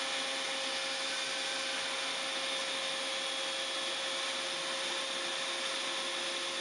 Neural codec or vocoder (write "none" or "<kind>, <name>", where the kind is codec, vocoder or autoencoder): none